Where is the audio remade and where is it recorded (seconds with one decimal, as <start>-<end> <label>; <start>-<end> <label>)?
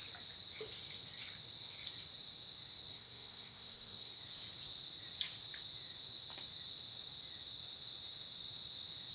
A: 0.0-2.9 recorded; 2.9-4.2 remade; 4.2-9.1 recorded